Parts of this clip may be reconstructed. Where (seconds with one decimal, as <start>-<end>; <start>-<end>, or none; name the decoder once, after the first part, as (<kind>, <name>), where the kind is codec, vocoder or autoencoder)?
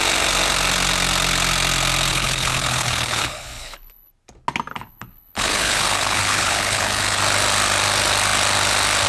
2.1-4.1 (codec, HILCodec); 4.7-7.2